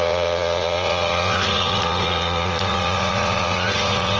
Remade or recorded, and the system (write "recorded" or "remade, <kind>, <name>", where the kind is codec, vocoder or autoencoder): remade, vocoder, Vocos